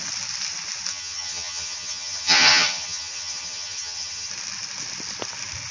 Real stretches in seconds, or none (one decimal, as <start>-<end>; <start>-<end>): 0.0-0.9; 4.3-5.7

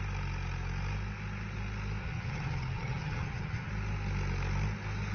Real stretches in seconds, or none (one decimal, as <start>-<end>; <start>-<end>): 0.0-2.0; 3.7-5.1

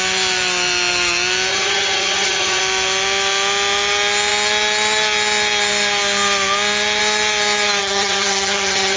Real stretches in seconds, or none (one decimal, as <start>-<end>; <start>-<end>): 0.0-1.5; 2.6-7.8

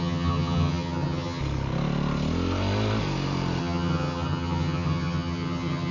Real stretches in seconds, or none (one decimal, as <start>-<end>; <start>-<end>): 1.4-3.6